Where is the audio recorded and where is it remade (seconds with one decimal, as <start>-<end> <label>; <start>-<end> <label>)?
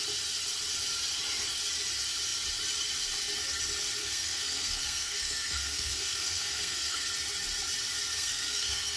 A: 0.0-4.0 recorded; 4.0-7.1 remade; 7.1-8.1 recorded; 8.1-9.0 remade